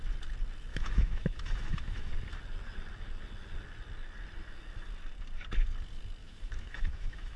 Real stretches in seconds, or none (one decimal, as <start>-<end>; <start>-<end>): 0.0-0.7; 2.1-6.2